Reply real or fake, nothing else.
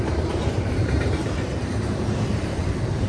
fake